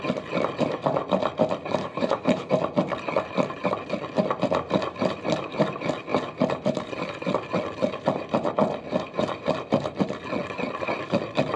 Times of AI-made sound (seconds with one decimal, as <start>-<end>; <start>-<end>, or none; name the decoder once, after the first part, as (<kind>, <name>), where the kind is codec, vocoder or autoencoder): 1.8-2.5 (codec, HILCodec)